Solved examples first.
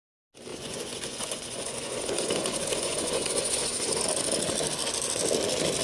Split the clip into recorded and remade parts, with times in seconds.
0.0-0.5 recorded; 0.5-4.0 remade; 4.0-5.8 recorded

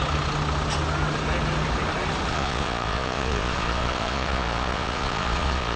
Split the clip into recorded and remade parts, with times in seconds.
0.0-2.3 recorded; 2.3-5.8 remade

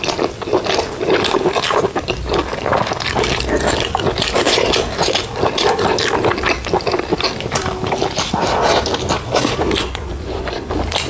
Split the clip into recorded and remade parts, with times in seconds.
0.0-9.8 recorded; 9.8-10.7 remade; 10.7-11.1 recorded